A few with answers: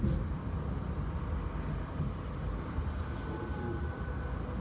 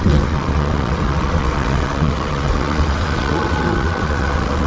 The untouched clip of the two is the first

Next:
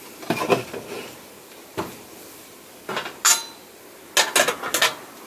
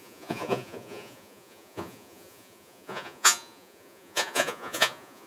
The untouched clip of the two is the first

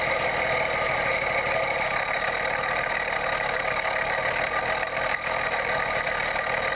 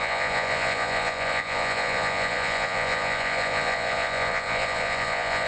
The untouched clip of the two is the first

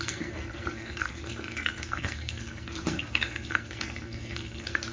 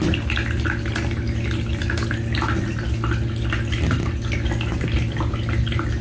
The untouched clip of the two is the second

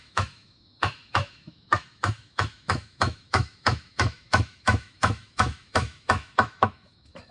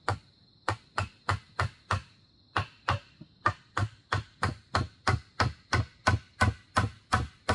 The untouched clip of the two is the second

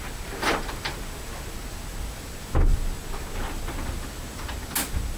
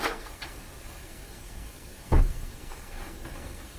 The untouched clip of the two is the first